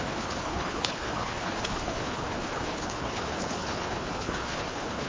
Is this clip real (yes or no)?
no